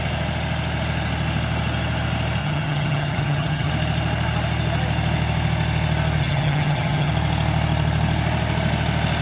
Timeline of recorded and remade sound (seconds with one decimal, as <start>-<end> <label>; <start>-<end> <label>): 0.0-2.4 recorded; 2.4-3.7 remade; 3.7-6.2 recorded; 6.2-7.1 remade; 7.1-9.2 recorded